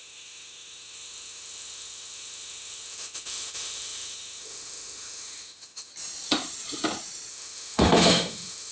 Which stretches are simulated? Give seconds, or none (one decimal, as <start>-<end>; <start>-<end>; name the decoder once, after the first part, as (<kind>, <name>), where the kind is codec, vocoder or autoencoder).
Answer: 0.0-5.9 (autoencoder, DAC-VAE); 7.3-8.7